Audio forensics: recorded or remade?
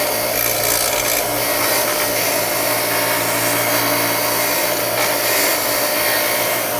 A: recorded